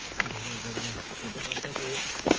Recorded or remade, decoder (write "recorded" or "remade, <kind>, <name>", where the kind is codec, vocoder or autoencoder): remade, codec, DAC